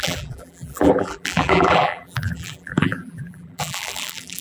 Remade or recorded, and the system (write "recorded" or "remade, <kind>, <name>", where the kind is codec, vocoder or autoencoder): remade, vocoder, BigVGAN v2